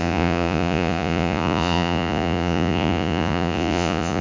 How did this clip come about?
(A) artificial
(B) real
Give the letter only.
A